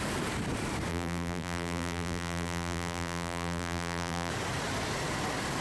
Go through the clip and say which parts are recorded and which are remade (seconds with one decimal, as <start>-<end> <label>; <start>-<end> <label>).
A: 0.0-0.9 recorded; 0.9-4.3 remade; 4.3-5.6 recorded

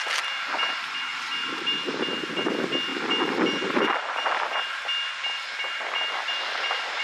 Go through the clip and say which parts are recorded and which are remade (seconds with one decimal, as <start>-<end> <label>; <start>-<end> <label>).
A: 0.0-7.0 recorded

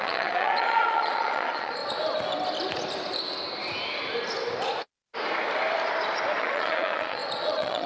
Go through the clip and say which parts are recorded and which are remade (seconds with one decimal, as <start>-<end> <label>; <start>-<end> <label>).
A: 0.0-1.8 remade; 1.8-6.4 recorded; 6.4-7.9 remade

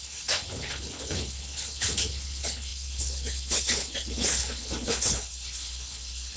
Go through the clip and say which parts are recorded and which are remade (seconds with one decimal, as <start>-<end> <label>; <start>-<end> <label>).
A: 0.0-6.4 remade

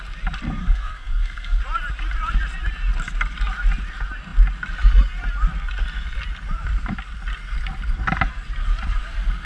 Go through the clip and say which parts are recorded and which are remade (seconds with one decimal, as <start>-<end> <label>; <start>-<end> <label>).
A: 0.0-0.6 recorded; 0.6-1.6 remade; 1.6-9.4 recorded

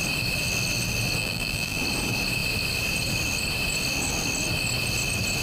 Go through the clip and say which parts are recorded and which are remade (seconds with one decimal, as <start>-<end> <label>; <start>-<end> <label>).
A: 0.0-1.2 recorded; 1.2-1.8 remade; 1.8-5.4 recorded

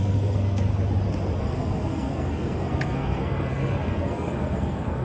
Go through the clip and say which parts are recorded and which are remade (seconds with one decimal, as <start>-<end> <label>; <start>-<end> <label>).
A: 0.0-0.7 remade; 0.7-1.4 recorded; 1.4-5.0 remade